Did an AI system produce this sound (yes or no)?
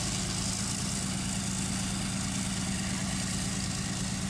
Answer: no